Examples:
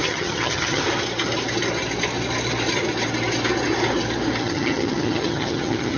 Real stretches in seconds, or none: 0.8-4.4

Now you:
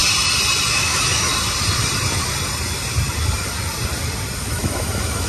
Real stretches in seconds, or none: 0.0-0.7; 1.3-4.5

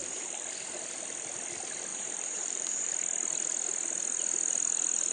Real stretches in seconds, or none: 0.5-1.9; 2.9-5.1

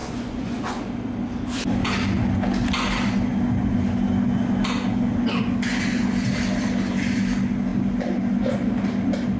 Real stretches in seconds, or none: 0.8-9.4

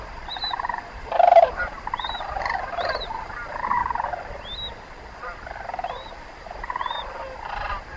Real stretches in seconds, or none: 3.8-6.1

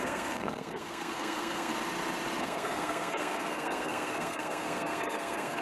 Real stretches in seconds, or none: 1.7-2.4

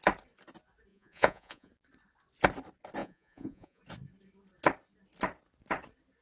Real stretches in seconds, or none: 0.0-0.9; 1.7-3.0; 3.8-6.2